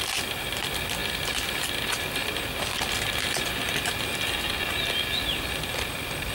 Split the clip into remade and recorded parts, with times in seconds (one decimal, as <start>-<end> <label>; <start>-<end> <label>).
0.0-6.3 recorded